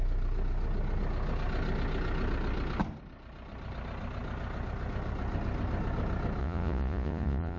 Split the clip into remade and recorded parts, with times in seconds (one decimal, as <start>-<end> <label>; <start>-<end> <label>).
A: 0.0-6.4 recorded; 6.4-7.6 remade